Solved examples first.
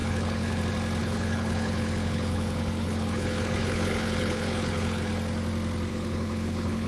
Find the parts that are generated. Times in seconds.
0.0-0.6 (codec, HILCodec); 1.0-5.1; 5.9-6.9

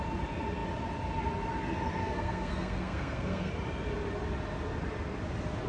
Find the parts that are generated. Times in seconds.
2.0-3.5 (codec, SNAC)

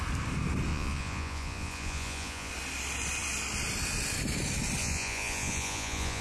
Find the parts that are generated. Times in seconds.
0.7-2.5 (vocoder, Vocos); 4.8-6.2